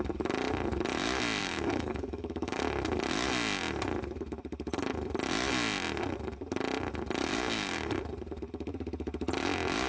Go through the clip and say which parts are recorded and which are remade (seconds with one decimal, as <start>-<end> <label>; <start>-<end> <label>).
0.0-1.4 recorded; 1.4-2.6 remade; 2.6-7.2 recorded; 7.2-8.0 remade; 8.0-9.9 recorded